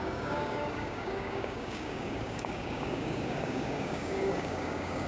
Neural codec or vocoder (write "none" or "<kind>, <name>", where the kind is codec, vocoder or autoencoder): codec, DAC